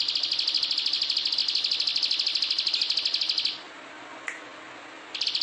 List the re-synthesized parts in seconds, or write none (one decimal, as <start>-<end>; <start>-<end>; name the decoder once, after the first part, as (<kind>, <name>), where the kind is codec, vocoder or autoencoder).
none